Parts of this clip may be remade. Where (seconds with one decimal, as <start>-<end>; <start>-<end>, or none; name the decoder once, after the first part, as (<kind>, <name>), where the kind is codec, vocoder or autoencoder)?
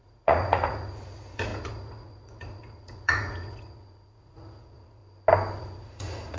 0.0-5.0 (vocoder, Vocos); 5.6-6.4